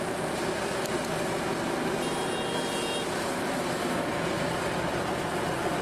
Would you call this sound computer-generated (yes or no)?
no